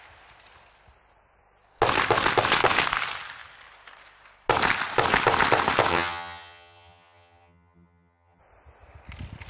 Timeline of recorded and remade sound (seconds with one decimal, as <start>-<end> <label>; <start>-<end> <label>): 0.0-5.9 recorded; 5.9-8.4 remade; 8.4-9.5 recorded